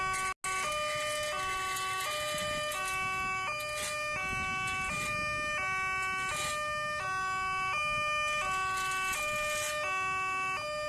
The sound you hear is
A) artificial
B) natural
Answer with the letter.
B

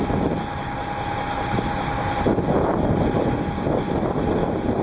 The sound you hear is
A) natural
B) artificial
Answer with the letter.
A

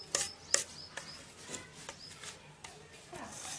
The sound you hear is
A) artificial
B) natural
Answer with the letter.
B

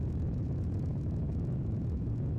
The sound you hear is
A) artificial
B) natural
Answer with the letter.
A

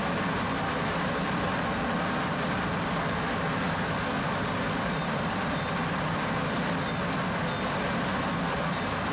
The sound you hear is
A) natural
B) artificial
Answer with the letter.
A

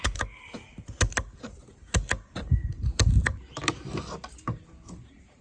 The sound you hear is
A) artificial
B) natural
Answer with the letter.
B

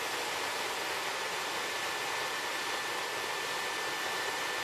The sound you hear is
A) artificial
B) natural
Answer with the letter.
B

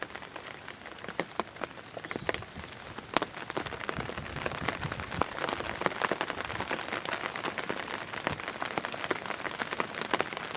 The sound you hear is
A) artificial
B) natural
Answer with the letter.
B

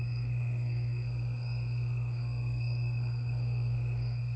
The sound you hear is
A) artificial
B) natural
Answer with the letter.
A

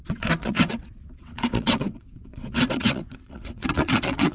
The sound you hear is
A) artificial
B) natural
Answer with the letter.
A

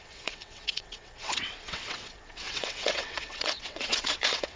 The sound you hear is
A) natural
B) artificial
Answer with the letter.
B